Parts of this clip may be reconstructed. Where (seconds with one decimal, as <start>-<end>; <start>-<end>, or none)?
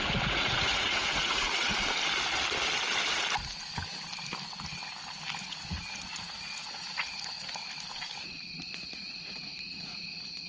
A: 0.0-1.7; 5.4-7.6; 8.3-10.5